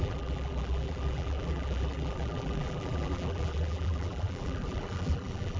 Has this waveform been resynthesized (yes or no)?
yes